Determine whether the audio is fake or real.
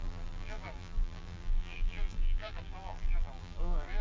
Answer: fake